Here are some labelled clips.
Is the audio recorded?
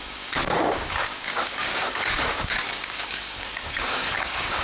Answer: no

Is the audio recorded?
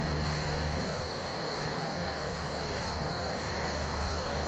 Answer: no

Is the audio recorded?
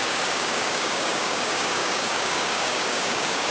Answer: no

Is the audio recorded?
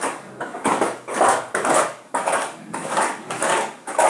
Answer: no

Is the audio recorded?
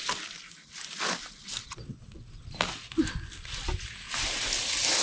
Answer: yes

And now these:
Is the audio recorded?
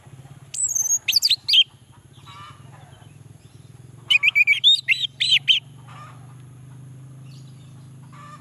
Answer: yes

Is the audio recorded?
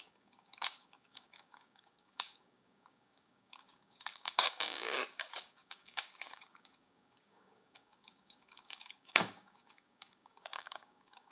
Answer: no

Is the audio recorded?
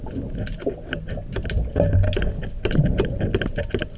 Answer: yes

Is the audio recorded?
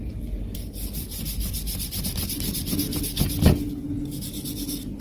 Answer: yes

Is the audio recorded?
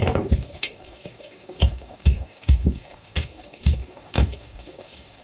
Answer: no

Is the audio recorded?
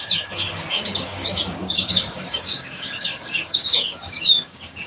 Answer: no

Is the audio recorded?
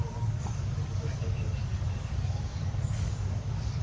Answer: no